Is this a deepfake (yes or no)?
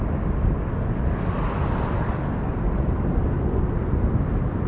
no